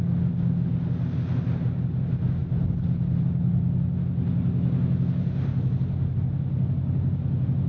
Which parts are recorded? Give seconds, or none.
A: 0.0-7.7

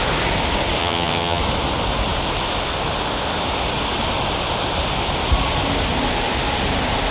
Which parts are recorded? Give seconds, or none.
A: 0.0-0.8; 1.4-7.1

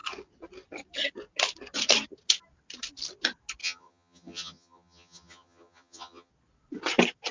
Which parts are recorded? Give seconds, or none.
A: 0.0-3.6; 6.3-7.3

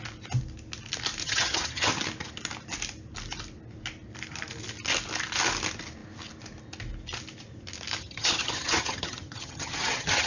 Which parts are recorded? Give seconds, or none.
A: 0.0-1.2; 1.9-8.0

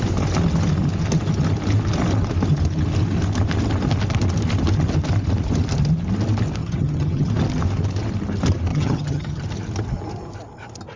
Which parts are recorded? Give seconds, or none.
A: 0.0-6.6; 7.3-8.7; 9.4-11.0

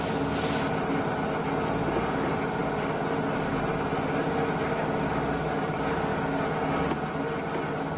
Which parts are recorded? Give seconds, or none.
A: 0.0-8.0

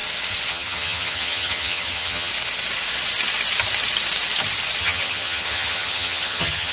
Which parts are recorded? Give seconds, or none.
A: 0.0-0.5; 2.3-4.8

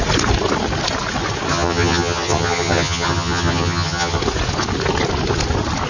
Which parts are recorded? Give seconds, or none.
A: 0.0-1.5; 4.2-5.9